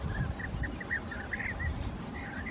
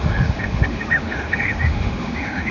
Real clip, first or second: first